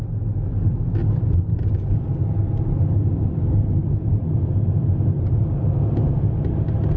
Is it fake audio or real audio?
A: real